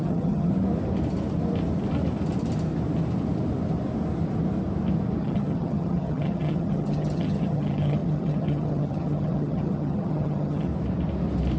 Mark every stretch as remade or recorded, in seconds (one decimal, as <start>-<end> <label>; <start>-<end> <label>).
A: 0.0-0.5 remade; 0.5-5.2 recorded; 5.2-10.7 remade; 10.7-11.6 recorded